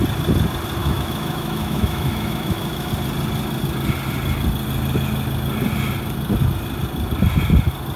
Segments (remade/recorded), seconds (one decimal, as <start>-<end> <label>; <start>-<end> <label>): 0.0-0.8 recorded; 0.8-2.9 remade; 2.9-8.0 recorded